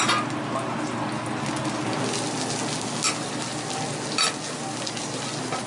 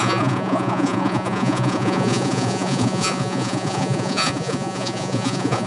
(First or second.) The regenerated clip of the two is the second